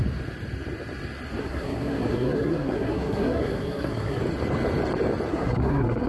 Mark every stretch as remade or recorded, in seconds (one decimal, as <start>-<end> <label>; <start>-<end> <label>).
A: 0.0-1.4 recorded; 1.4-4.2 remade; 4.2-5.3 recorded; 5.3-6.1 remade